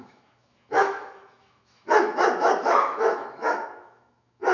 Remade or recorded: remade